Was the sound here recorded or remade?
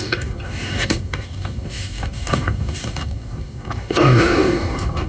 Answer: remade